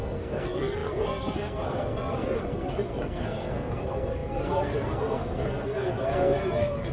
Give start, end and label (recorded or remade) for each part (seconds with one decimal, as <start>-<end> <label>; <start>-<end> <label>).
0.0-6.9 remade